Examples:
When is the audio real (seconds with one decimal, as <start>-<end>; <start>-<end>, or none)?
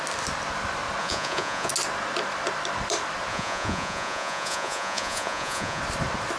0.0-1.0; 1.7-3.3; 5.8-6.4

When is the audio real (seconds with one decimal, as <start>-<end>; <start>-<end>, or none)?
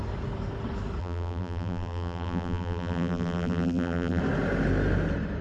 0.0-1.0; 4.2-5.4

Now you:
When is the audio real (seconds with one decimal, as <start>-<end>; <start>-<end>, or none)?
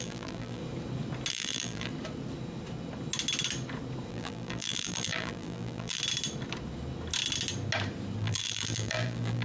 0.6-1.3; 1.9-4.1; 6.0-8.2